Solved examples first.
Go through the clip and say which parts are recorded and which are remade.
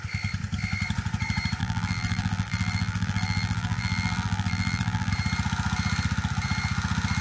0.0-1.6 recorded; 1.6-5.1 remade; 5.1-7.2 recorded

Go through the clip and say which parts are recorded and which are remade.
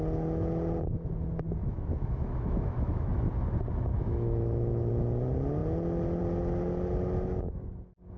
0.0-1.6 recorded; 1.6-3.3 remade; 3.3-3.9 recorded; 3.9-4.9 remade; 4.9-8.2 recorded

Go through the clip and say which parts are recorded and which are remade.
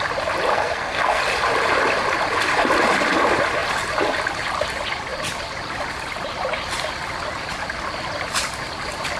0.0-0.5 recorded; 0.5-1.2 remade; 1.2-9.2 recorded